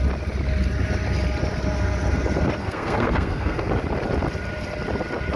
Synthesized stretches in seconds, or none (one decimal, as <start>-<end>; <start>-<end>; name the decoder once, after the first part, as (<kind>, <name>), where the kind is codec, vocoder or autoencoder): 2.6-3.7 (codec, SNAC)